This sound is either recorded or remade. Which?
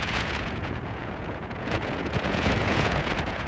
remade